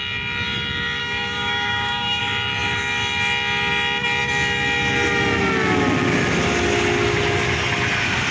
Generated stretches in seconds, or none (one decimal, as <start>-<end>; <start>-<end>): 1.0-2.2